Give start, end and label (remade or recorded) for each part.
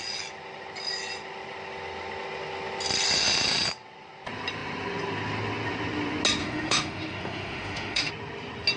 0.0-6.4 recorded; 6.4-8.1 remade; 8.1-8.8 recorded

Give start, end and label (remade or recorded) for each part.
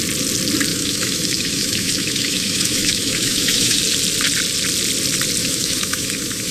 0.0-0.7 recorded; 0.7-3.8 remade; 3.8-5.4 recorded; 5.4-6.5 remade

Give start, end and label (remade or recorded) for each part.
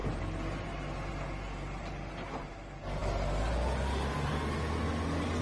0.0-5.4 recorded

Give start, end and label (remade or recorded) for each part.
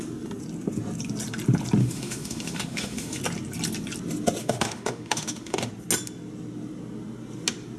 0.0-1.8 recorded; 1.8-3.2 remade; 3.2-4.4 recorded; 4.4-5.7 remade; 5.7-7.8 recorded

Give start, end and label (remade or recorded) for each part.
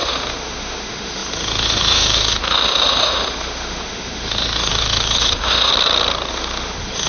0.0-5.7 remade; 5.7-6.3 recorded; 6.3-7.1 remade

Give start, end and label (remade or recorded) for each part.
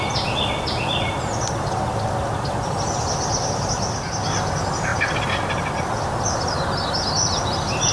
0.0-7.9 recorded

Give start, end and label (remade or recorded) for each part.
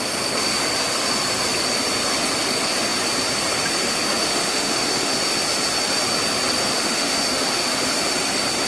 0.0-4.2 recorded; 4.2-5.2 remade; 5.2-6.7 recorded; 6.7-7.9 remade; 7.9-8.7 recorded